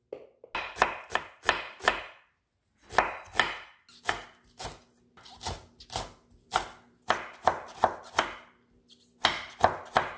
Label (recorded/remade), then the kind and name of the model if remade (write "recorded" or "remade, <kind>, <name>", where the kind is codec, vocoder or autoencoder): recorded